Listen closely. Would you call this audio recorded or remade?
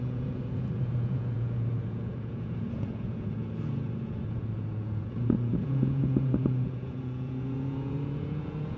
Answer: remade